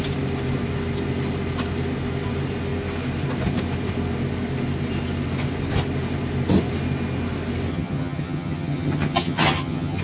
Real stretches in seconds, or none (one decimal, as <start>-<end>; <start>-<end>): 0.0-7.7